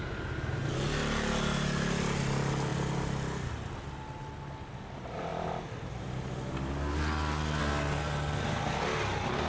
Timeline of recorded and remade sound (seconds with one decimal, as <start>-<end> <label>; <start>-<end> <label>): 0.0-9.5 recorded